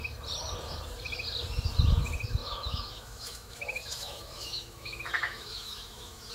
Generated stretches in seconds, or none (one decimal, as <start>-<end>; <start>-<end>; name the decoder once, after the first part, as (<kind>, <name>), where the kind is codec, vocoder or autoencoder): 2.4-6.3 (autoencoder, DAC-VAE)

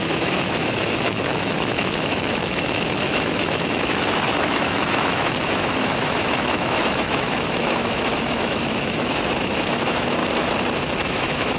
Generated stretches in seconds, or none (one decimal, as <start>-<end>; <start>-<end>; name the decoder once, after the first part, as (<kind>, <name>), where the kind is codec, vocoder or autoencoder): 0.0-10.2 (autoencoder, DAC-VAE); 11.1-11.6

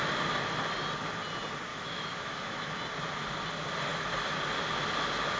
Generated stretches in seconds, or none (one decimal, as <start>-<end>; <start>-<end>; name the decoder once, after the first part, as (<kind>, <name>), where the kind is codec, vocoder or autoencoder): 1.7-2.7 (autoencoder, DAC-VAE)

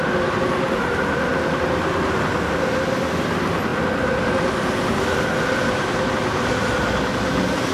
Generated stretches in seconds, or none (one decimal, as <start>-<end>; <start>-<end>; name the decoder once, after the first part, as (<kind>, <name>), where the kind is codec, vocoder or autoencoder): none

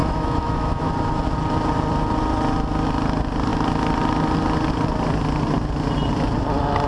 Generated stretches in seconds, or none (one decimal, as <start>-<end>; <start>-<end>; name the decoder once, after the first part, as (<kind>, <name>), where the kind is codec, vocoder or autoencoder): 0.0-0.9 (autoencoder, DAC-VAE)

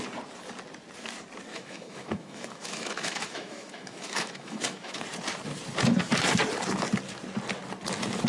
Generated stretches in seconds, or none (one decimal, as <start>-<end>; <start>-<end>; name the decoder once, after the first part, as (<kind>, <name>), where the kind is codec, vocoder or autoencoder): 1.5-5.0 (autoencoder, DAC-VAE)

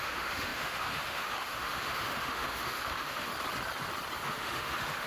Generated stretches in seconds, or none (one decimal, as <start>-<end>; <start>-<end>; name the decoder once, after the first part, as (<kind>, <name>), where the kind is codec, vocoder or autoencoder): 0.0-3.3 (autoencoder, DAC-VAE); 4.2-5.1